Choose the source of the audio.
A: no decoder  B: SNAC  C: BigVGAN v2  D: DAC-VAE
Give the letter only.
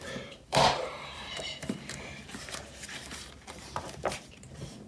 C